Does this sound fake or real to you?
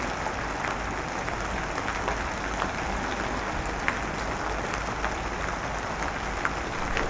real